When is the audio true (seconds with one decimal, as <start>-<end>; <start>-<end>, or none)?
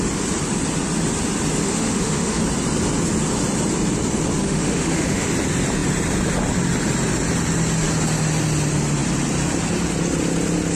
0.0-1.6; 2.4-4.4; 5.3-10.8